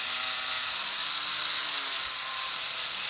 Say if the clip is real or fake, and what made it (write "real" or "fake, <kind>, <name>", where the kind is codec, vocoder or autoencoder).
fake, vocoder, BigVGAN v2